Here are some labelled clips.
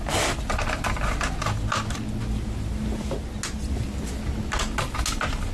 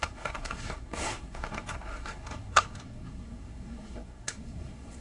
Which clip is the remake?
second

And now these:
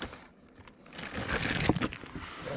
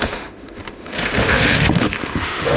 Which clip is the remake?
second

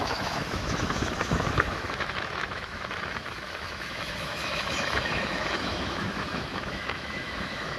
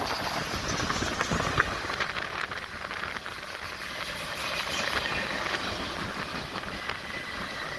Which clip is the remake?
first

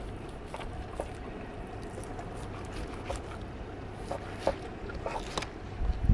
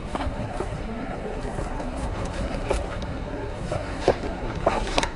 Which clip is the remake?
second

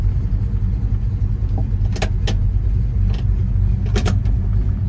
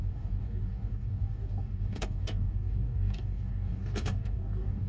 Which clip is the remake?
second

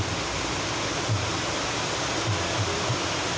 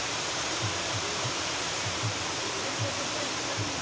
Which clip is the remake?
second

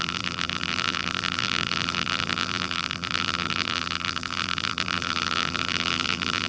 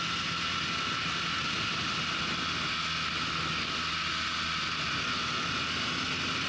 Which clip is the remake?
first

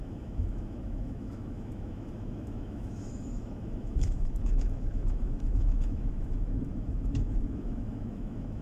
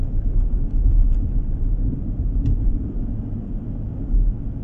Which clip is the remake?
first